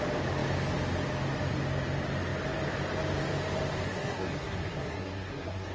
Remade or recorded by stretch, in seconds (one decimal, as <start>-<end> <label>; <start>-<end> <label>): 0.0-3.9 recorded; 3.9-5.7 remade